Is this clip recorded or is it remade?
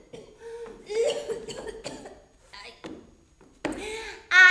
recorded